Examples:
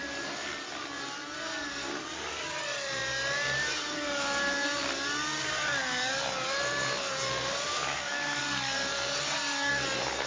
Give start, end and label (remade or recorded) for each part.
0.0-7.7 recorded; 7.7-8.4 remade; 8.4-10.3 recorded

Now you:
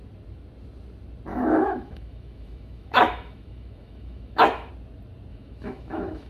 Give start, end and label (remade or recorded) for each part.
0.0-1.3 recorded; 1.3-4.7 remade; 4.7-5.3 recorded; 5.3-6.3 remade

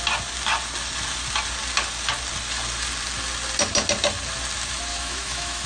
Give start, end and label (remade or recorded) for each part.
0.0-4.9 recorded; 4.9-5.7 remade

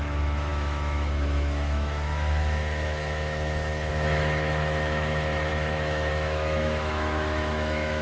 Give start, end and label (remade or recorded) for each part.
0.0-8.0 remade